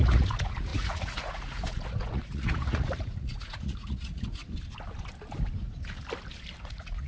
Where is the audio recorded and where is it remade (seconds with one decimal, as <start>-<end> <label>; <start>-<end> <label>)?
0.0-4.4 remade; 4.4-6.6 recorded; 6.6-7.1 remade